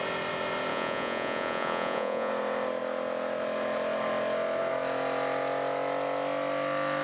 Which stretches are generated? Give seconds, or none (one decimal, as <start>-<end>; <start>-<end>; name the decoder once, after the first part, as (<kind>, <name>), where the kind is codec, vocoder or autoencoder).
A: 0.7-2.3 (vocoder, Vocos)